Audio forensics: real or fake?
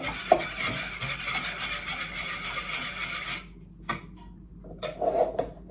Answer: real